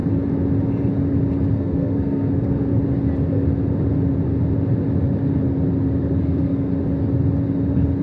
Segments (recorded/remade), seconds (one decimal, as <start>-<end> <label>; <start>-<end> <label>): 0.0-1.5 recorded; 1.5-2.8 remade; 2.8-6.2 recorded; 6.2-6.7 remade; 6.7-8.0 recorded